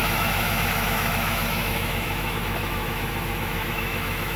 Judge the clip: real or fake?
fake